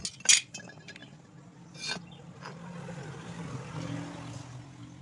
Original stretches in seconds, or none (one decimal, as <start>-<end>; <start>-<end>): 0.0-5.0